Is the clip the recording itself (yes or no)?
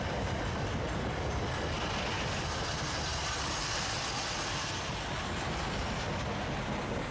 yes